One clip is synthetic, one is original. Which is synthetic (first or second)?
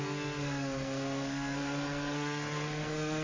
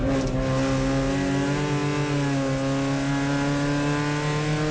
first